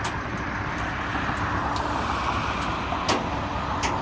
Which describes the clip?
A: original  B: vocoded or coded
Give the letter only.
A